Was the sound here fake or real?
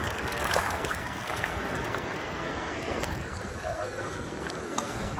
fake